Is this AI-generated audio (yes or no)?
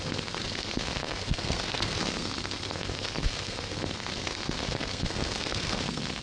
yes